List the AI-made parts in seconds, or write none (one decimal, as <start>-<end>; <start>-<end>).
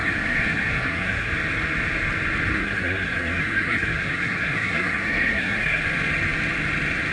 0.0-1.3; 2.5-5.8